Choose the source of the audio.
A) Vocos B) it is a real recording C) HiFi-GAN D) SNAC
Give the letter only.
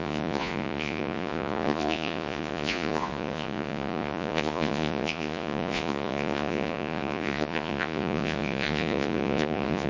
A